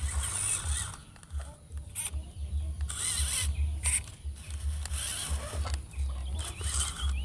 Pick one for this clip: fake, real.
real